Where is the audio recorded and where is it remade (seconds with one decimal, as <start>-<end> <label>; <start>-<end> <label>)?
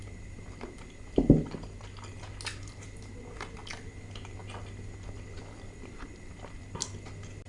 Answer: 0.0-7.5 recorded